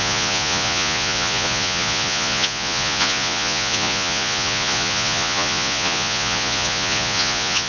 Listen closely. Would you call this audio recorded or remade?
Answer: remade